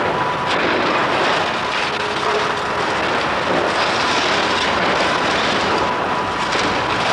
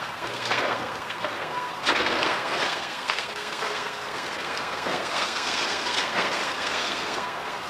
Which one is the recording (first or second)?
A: first